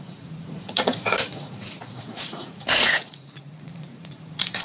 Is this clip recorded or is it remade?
remade